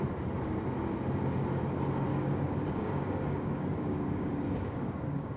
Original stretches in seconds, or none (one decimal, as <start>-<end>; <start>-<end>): 0.0-2.1